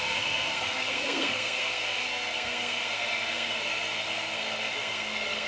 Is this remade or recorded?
remade